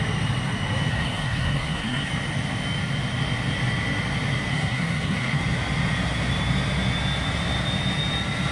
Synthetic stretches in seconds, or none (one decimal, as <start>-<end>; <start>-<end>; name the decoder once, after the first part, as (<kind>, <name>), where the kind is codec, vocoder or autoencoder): 0.9-2.1 (codec, SNAC); 4.5-5.4